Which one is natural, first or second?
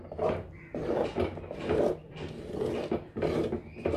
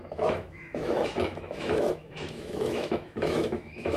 first